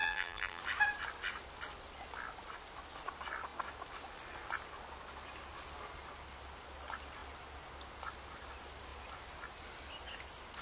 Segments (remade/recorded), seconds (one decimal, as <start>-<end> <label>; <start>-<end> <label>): 0.0-0.6 remade; 0.6-10.6 recorded